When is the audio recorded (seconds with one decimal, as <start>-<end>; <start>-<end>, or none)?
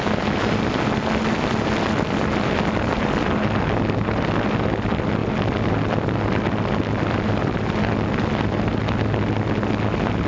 0.0-10.3